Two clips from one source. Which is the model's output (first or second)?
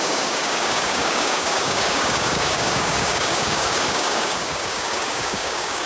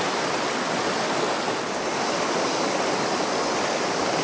first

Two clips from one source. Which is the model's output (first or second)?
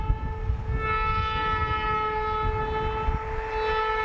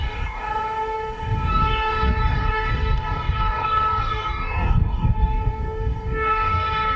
second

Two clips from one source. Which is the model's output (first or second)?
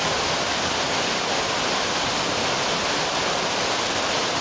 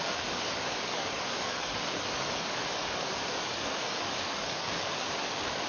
second